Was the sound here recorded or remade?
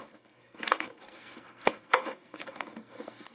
remade